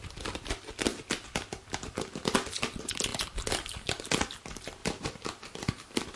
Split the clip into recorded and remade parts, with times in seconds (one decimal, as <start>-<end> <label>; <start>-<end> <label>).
0.0-3.1 remade; 3.1-4.1 recorded; 4.1-4.8 remade; 4.8-5.6 recorded; 5.6-6.2 remade

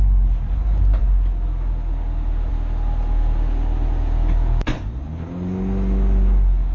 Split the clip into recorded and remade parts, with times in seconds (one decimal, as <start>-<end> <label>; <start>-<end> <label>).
0.0-6.7 recorded

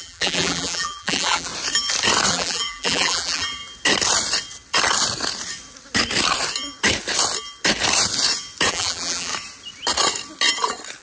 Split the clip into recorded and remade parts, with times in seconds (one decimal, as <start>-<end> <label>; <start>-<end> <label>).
0.0-1.5 remade; 1.5-2.3 recorded; 2.3-3.6 remade; 3.6-8.7 recorded; 8.7-9.3 remade; 9.3-11.0 recorded

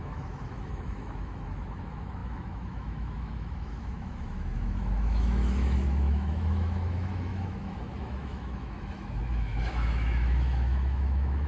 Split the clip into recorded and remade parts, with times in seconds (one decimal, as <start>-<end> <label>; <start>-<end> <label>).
0.0-11.5 remade

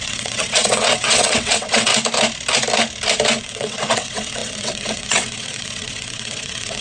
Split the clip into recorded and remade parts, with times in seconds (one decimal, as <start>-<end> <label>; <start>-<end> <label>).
0.0-1.9 remade; 1.9-3.4 recorded; 3.4-6.8 remade

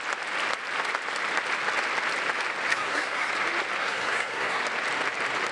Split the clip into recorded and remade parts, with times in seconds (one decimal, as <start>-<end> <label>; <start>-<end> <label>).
0.0-2.7 recorded; 2.7-3.3 remade; 3.3-3.8 recorded; 3.8-4.6 remade; 4.6-5.5 recorded